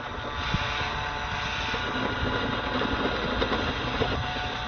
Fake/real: real